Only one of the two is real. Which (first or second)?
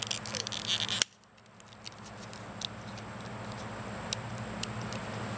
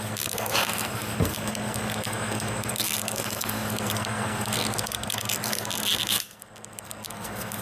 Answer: first